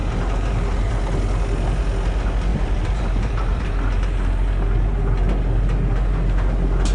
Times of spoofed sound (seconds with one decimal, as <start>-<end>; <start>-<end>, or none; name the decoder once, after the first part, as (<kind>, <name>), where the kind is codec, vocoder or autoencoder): 0.0-0.9 (vocoder, BigVGAN v2); 2.5-3.7